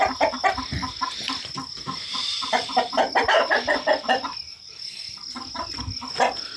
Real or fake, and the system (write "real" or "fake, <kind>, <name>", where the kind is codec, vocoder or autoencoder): real